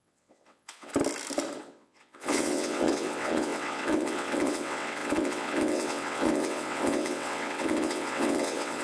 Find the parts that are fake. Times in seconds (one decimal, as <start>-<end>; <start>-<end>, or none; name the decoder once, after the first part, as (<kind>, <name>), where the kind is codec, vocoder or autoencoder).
0.0-0.9 (vocoder, WaveNeXt); 1.6-8.8